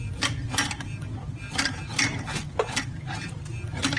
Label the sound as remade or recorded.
recorded